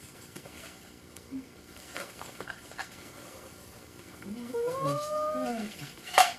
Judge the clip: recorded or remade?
remade